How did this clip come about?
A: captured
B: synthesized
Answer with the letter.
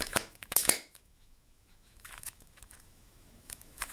B